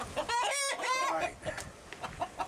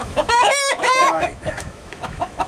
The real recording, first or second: first